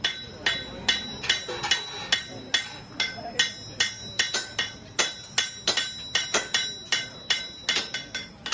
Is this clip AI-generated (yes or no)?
no